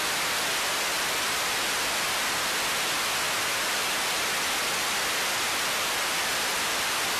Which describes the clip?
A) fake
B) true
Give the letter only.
B